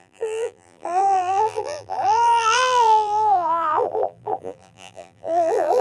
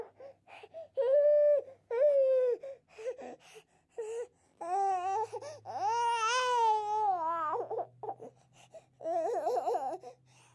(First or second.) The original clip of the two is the second